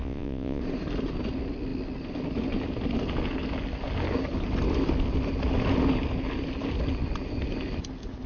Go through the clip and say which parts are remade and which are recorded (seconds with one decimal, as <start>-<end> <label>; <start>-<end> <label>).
0.0-0.6 remade; 0.6-8.3 recorded